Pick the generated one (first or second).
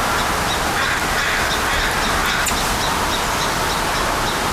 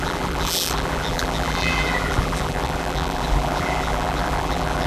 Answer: second